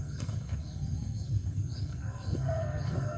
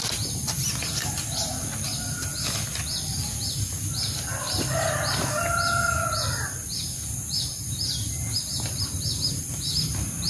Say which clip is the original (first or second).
second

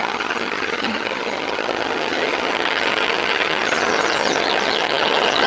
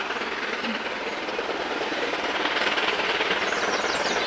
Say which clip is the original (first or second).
second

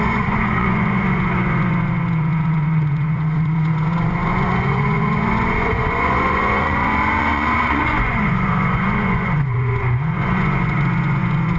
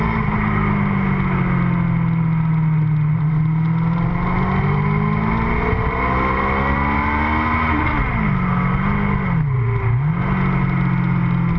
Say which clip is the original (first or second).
second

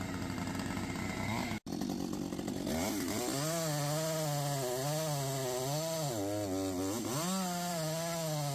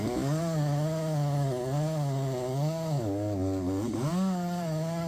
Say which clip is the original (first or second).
first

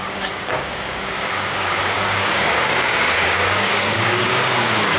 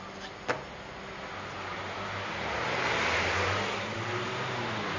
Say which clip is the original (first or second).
second